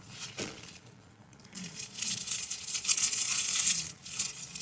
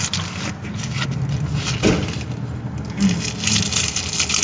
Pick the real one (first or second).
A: second